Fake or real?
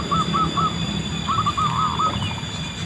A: real